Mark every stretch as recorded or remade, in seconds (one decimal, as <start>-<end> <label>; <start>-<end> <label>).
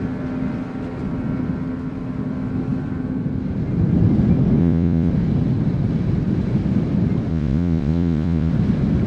0.0-4.6 recorded; 4.6-5.1 remade; 5.1-7.3 recorded; 7.3-8.5 remade; 8.5-9.1 recorded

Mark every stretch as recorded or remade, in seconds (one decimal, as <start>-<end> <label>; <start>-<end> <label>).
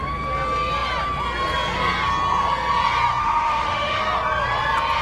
0.0-3.2 recorded; 3.2-4.0 remade; 4.0-5.0 recorded